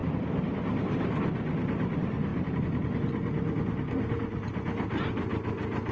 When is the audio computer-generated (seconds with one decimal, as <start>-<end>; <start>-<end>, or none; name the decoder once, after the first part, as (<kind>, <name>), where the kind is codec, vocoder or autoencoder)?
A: none

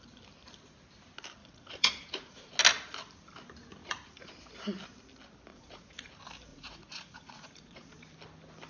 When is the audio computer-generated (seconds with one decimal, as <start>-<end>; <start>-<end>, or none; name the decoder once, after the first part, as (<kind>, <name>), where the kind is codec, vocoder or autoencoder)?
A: 1.4-2.5 (vocoder, Vocos); 3.8-4.3; 5.5-6.1; 6.5-7.9

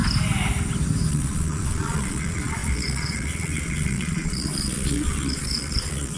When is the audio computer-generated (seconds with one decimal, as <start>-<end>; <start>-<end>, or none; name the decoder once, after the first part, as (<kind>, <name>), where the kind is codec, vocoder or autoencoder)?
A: 1.1-6.2 (vocoder, Vocos)

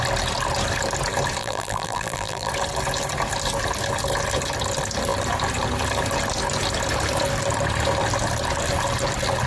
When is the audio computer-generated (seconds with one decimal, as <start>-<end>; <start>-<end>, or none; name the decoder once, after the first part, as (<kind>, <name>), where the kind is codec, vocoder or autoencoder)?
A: 1.4-2.5 (vocoder, BigVGAN v2)

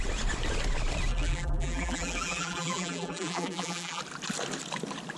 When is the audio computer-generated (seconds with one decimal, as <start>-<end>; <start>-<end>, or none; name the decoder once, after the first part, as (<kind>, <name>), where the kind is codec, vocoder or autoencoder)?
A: 1.1-4.0 (vocoder, BigVGAN v2)

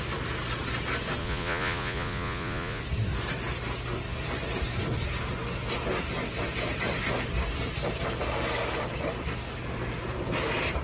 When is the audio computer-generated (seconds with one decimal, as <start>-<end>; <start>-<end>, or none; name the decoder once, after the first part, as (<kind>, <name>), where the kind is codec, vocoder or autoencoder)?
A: 1.2-2.8 (vocoder, Vocos)